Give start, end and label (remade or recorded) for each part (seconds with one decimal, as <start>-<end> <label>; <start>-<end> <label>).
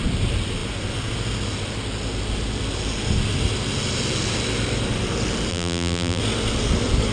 0.0-5.5 recorded; 5.5-6.2 remade; 6.2-7.1 recorded